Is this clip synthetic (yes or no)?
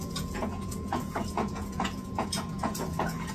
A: yes